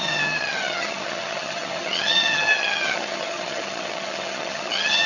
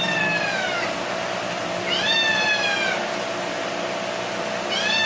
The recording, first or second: second